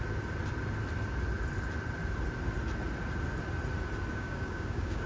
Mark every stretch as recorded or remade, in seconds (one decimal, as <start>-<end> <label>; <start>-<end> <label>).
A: 0.0-4.1 recorded; 4.1-5.1 remade

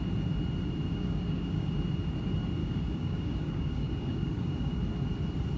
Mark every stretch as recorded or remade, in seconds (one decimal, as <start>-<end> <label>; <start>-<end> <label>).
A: 0.0-0.9 recorded; 0.9-1.7 remade; 1.7-2.6 recorded; 2.6-4.8 remade; 4.8-5.6 recorded

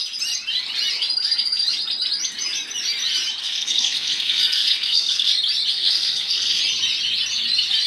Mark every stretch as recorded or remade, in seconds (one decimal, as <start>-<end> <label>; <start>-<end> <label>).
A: 0.0-3.4 recorded; 3.4-5.3 remade; 5.3-5.7 recorded; 5.7-6.6 remade; 6.6-7.9 recorded

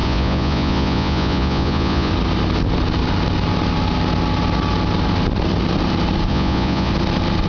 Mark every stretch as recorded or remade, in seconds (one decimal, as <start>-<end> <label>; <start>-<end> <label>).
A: 0.0-2.1 remade; 2.1-6.3 recorded; 6.3-6.9 remade; 6.9-7.5 recorded

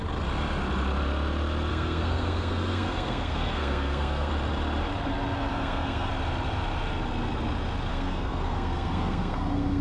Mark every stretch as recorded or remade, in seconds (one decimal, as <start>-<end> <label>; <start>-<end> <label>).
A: 0.0-1.7 recorded; 1.7-4.3 remade; 4.3-5.5 recorded; 5.5-6.1 remade; 6.1-7.9 recorded; 7.9-9.8 remade

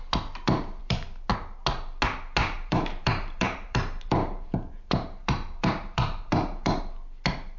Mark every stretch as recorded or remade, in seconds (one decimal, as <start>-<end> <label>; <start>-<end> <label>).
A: 0.0-0.8 recorded; 0.8-1.3 remade; 1.3-2.4 recorded; 2.4-6.8 remade; 6.8-7.6 recorded

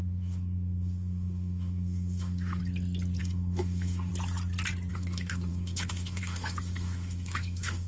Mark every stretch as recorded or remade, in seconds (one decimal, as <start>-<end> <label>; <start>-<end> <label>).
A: 0.0-2.6 remade; 2.6-3.2 recorded; 3.2-4.1 remade; 4.1-4.9 recorded; 4.9-7.9 remade